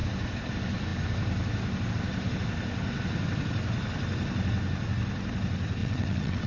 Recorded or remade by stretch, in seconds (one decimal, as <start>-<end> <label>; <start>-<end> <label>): 0.0-5.8 recorded; 5.8-6.5 remade